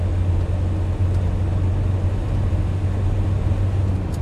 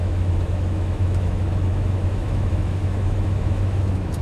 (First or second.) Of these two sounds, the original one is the first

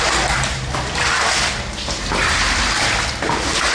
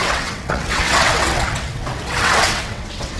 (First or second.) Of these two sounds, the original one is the first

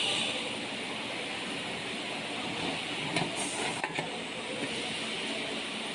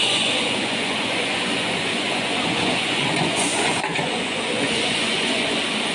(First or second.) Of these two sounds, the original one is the first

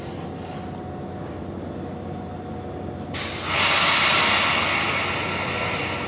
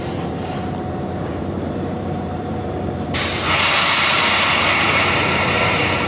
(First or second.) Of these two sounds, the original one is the first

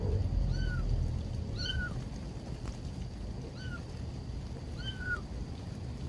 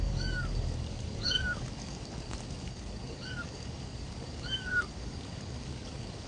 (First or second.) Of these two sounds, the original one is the first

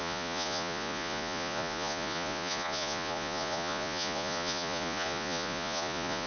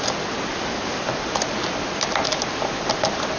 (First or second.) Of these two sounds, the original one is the second